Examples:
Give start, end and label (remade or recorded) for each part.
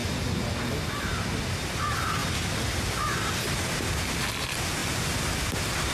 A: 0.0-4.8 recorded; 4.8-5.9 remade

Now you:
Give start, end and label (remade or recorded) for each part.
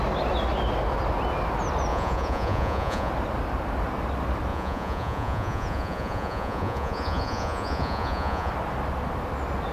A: 0.0-1.9 recorded; 1.9-3.1 remade; 3.1-4.5 recorded; 4.5-8.5 remade; 8.5-9.7 recorded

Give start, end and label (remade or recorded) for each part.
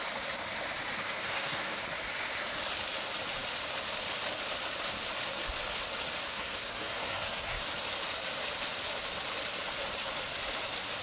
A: 0.0-1.2 recorded; 1.2-1.8 remade; 1.8-6.3 recorded; 6.3-7.6 remade; 7.6-11.0 recorded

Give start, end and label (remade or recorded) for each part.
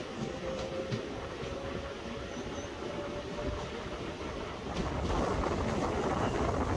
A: 0.0-6.8 recorded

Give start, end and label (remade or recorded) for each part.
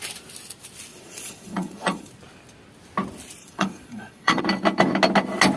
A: 0.0-0.9 recorded; 0.9-2.1 remade; 2.1-3.4 recorded; 3.4-4.4 remade; 4.4-5.6 recorded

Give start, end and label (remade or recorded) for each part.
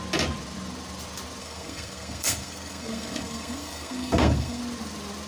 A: 0.0-1.4 recorded; 1.4-4.6 remade; 4.6-5.3 recorded